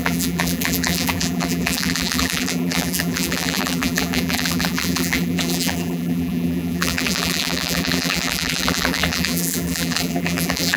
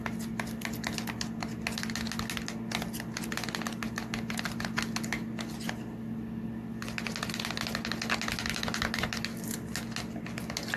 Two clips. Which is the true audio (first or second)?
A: second